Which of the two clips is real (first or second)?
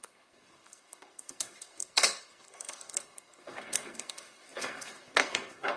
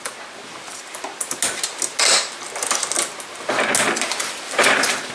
second